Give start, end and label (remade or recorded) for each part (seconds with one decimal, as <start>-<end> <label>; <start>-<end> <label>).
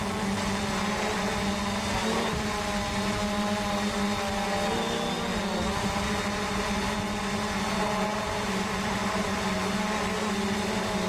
0.0-2.0 recorded; 2.0-2.5 remade; 2.5-8.1 recorded; 8.1-9.2 remade; 9.2-11.1 recorded